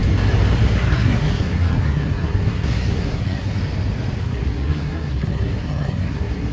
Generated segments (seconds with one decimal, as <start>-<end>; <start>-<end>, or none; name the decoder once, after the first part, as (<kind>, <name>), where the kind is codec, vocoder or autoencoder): 0.6-3.6 (codec, SNAC); 4.2-6.5